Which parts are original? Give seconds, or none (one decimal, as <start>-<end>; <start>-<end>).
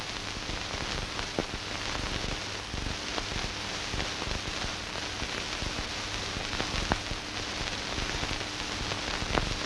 0.0-9.7